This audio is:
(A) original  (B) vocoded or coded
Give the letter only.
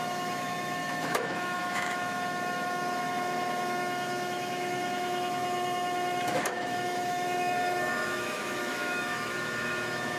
B